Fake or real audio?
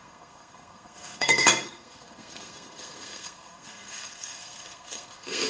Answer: fake